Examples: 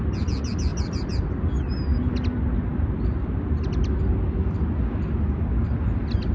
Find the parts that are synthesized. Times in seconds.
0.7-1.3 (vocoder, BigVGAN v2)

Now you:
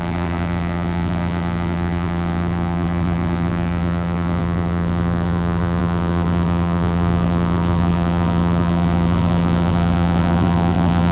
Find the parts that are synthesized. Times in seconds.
0.0-11.1 (vocoder, BigVGAN v2)

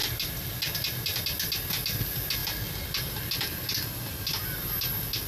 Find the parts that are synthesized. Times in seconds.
none

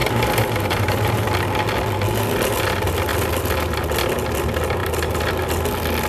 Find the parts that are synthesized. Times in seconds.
0.0-1.3 (vocoder, BigVGAN v2)

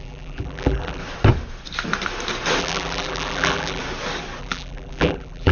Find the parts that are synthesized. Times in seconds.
0.0-1.0 (vocoder, BigVGAN v2); 2.6-3.8; 4.4-5.5

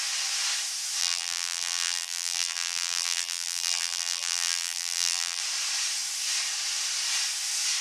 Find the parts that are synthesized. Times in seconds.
1.0-5.4 (vocoder, BigVGAN v2)